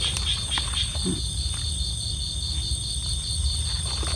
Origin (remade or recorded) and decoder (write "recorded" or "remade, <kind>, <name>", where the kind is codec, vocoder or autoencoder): recorded